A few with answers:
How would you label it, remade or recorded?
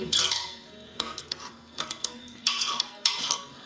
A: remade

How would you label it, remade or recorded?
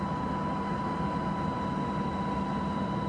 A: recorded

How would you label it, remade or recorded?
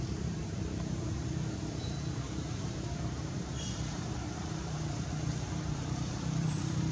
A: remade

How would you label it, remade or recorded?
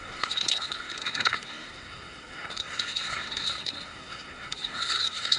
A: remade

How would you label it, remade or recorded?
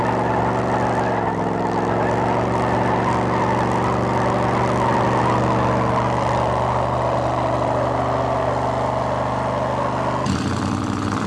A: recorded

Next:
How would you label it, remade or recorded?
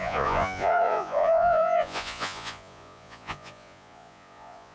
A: remade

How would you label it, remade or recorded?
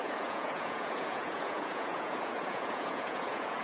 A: remade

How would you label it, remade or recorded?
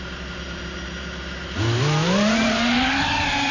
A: recorded